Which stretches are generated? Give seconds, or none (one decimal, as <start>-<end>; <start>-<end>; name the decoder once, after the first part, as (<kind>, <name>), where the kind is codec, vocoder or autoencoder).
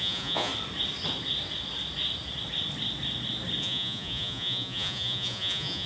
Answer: 0.0-0.5 (vocoder, Vocos); 3.6-5.9